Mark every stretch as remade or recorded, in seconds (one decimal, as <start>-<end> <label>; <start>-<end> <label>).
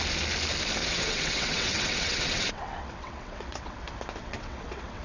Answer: 0.0-0.8 recorded; 0.8-3.8 remade; 3.8-4.2 recorded; 4.2-5.0 remade